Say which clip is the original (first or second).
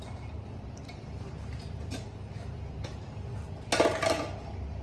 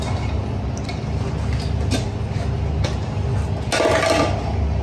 second